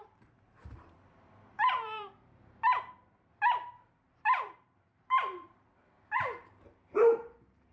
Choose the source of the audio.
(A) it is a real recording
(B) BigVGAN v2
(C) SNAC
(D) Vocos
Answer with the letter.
B